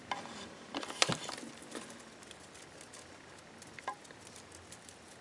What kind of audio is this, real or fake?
real